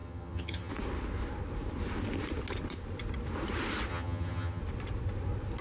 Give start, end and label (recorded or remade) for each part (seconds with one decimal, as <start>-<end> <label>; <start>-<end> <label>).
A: 0.0-0.7 remade; 0.7-3.9 recorded; 3.9-4.6 remade; 4.6-5.6 recorded